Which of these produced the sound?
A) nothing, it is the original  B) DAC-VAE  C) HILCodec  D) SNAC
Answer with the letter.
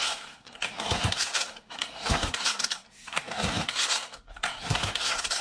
D